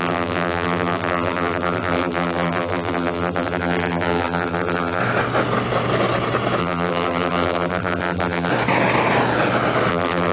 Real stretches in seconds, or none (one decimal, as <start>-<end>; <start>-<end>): 5.0-6.6; 8.5-9.9